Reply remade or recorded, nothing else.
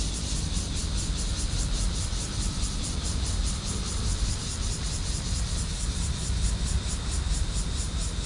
remade